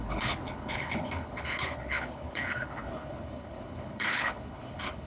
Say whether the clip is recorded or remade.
remade